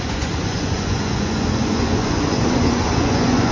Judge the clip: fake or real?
fake